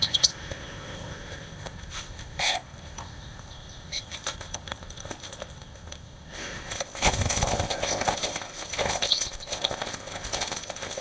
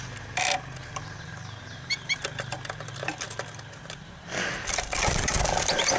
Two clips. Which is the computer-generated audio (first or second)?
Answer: first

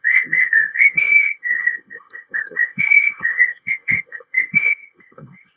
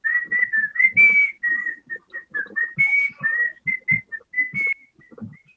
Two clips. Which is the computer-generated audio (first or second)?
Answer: first